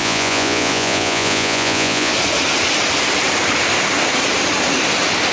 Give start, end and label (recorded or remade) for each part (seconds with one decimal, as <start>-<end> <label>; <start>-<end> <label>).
0.0-2.1 remade; 2.1-5.3 recorded